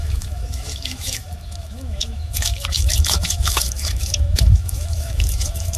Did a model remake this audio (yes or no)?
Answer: yes